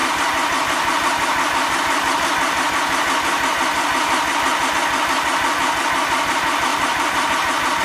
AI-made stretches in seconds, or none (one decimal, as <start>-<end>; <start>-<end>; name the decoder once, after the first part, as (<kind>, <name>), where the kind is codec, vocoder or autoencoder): 6.7-7.3 (vocoder, BigVGAN v2)